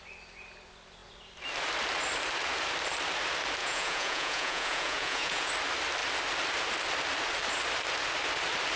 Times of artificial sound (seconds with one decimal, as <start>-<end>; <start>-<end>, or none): 3.6-5.5